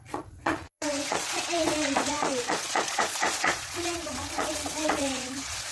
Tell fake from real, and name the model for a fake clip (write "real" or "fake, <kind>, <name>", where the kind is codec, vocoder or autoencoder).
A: fake, vocoder, Vocos